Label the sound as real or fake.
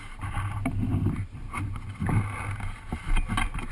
real